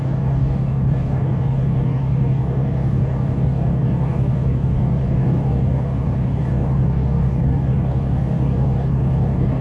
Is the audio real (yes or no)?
no